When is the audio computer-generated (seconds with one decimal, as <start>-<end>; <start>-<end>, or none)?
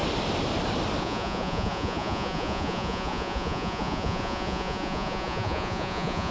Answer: 1.0-6.3